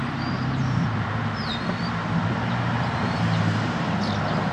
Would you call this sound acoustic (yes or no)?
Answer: no